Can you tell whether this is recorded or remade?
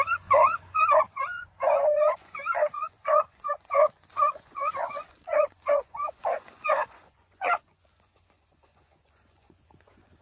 remade